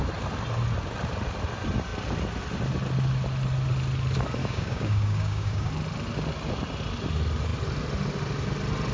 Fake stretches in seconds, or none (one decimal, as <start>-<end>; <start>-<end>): 4.4-5.7